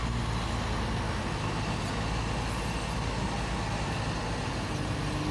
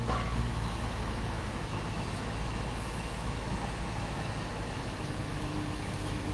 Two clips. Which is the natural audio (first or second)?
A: first